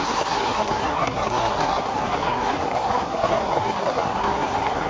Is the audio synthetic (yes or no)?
yes